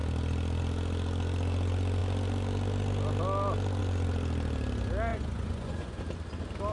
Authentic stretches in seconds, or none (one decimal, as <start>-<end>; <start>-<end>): 0.0-5.1; 6.0-6.7